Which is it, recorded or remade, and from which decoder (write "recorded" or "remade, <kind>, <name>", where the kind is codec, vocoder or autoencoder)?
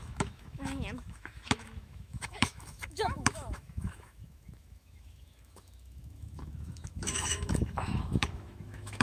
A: remade, autoencoder, DAC-VAE